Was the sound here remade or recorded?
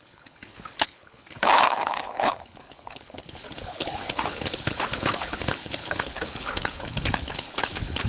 remade